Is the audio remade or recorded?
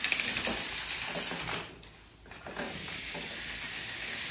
recorded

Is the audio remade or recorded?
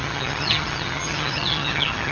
remade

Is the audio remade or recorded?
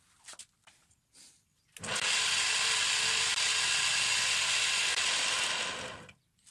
recorded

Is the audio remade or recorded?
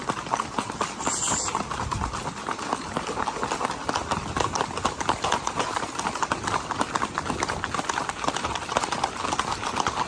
recorded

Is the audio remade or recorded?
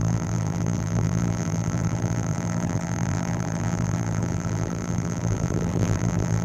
remade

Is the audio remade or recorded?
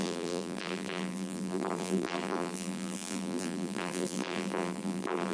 remade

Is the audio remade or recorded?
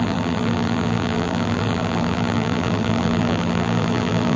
remade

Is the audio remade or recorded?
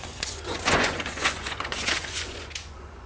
remade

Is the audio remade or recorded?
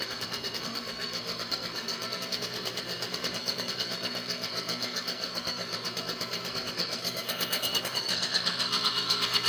remade